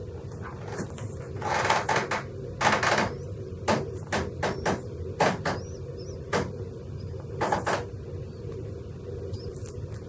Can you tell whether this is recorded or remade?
recorded